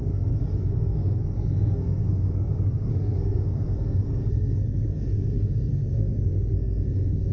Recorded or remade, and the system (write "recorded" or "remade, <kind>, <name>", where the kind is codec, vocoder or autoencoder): remade, codec, SNAC